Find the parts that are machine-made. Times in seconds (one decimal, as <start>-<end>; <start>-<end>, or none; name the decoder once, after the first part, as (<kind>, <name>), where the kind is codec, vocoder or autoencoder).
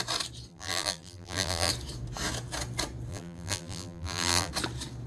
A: 0.5-1.7 (vocoder, BigVGAN v2); 3.1-4.5